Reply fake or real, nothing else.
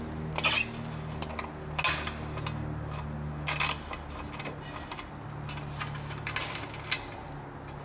real